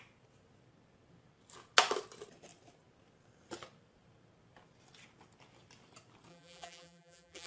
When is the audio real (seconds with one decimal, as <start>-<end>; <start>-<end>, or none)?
0.0-6.3